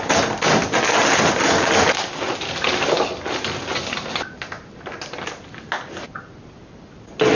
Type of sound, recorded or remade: recorded